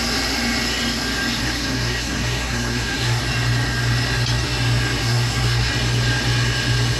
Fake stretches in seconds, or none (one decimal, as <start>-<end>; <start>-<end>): 1.4-3.2; 5.0-5.7